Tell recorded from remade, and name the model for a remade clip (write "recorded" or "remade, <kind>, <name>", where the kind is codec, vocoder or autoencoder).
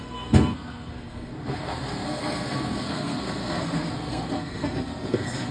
remade, codec, SNAC